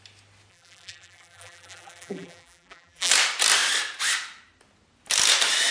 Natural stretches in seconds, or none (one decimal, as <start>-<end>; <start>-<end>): 0.0-0.5; 3.1-5.7